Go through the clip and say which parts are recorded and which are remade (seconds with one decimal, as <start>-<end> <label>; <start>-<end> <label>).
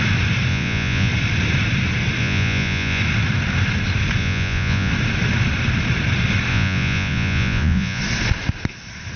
0.0-0.5 recorded; 0.5-1.1 remade; 1.1-2.2 recorded; 2.2-3.0 remade; 3.0-4.2 recorded; 4.2-4.9 remade; 4.9-6.5 recorded; 6.5-8.0 remade; 8.0-9.2 recorded